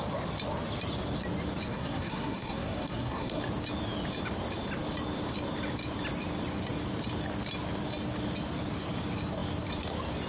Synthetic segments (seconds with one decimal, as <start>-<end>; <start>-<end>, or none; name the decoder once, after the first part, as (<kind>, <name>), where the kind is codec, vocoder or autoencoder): 1.7-3.4 (codec, SNAC)